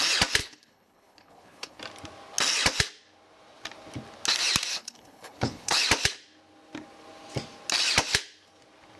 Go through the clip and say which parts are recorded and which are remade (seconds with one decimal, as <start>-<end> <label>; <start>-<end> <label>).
0.0-0.4 recorded; 0.4-1.8 remade; 1.8-4.7 recorded; 4.7-5.8 remade; 5.8-9.0 recorded